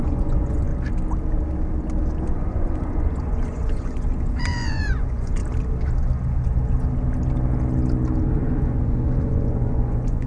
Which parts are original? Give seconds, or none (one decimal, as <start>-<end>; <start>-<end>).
0.7-2.3; 5.4-8.2